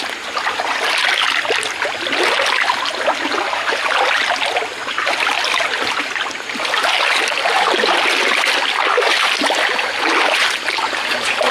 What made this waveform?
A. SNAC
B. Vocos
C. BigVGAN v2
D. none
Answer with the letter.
D